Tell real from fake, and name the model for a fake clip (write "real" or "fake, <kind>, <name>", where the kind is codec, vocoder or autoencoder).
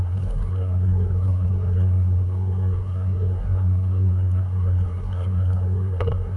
fake, codec, SNAC